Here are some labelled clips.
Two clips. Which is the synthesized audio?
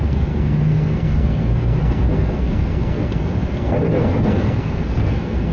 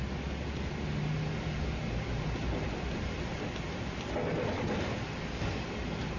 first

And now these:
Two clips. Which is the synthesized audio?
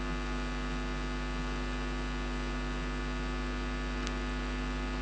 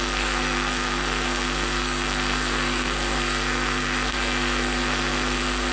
second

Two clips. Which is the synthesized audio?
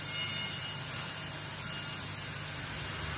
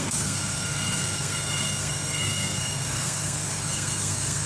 second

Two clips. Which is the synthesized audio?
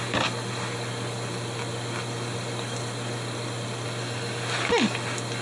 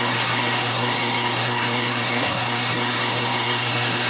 second